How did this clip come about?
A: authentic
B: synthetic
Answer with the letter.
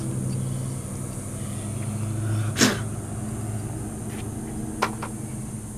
A